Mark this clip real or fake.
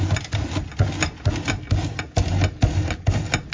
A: real